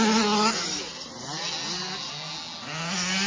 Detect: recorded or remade recorded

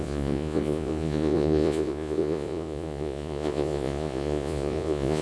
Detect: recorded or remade remade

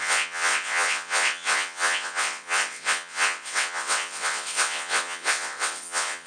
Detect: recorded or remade remade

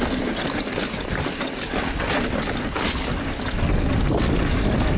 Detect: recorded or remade recorded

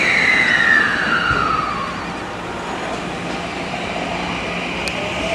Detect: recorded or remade recorded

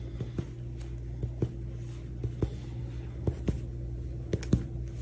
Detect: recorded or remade recorded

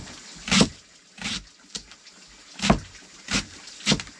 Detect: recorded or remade recorded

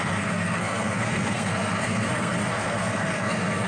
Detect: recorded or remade remade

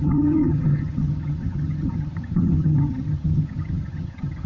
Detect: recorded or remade remade